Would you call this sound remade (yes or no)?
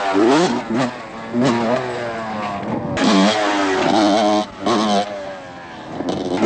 no